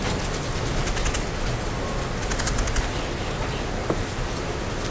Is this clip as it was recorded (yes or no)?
yes